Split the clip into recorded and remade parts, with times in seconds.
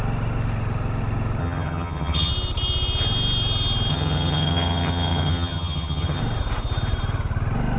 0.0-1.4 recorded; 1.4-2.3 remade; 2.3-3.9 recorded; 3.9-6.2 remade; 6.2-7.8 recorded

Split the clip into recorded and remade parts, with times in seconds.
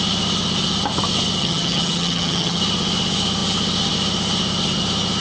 0.0-1.4 recorded; 1.4-2.6 remade; 2.6-5.2 recorded